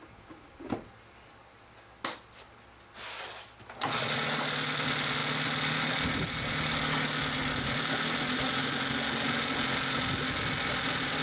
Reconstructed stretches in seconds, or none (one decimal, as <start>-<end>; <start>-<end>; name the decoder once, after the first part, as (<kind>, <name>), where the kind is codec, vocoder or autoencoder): none